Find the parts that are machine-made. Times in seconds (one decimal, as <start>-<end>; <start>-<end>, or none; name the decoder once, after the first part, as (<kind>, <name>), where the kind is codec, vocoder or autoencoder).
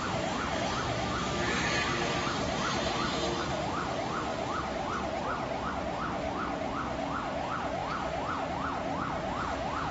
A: none